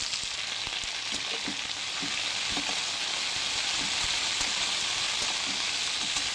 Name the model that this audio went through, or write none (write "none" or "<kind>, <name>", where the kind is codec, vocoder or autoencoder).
none